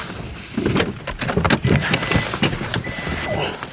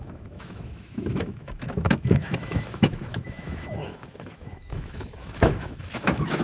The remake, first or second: second